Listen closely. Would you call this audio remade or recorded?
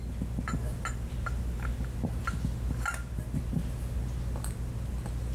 recorded